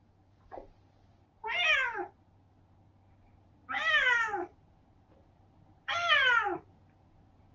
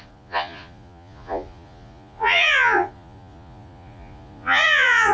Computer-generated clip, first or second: second